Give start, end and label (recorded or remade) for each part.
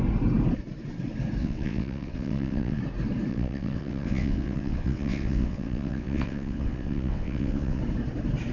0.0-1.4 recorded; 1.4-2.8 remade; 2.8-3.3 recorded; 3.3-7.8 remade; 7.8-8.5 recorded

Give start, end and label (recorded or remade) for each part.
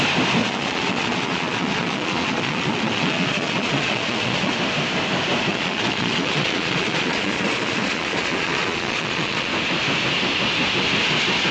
0.0-0.4 recorded; 0.4-4.5 remade; 4.5-5.5 recorded; 5.5-9.5 remade; 9.5-11.5 recorded